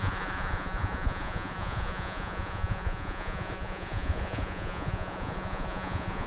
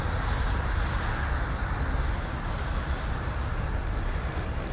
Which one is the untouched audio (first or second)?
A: second